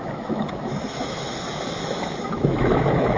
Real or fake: fake